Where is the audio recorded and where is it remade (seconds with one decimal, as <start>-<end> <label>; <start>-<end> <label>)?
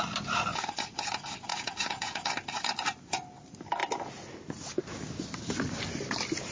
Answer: 0.0-1.5 recorded; 1.5-2.3 remade; 2.3-6.5 recorded